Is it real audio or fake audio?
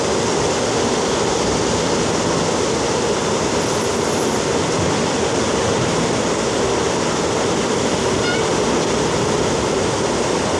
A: real